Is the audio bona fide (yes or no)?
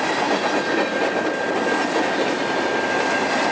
yes